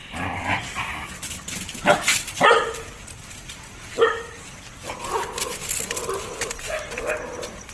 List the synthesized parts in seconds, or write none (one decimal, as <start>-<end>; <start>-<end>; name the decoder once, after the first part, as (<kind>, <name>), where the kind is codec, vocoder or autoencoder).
none